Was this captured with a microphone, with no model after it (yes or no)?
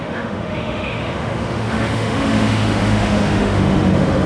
no